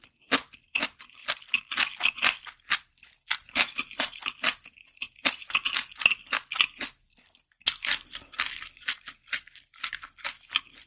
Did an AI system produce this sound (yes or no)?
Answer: no